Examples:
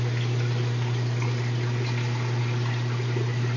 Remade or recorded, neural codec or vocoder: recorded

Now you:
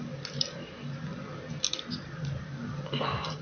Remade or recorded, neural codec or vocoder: recorded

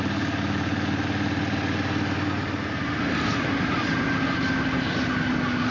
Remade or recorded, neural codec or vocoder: recorded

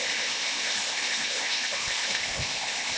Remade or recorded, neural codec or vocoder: remade, codec, ZipCodec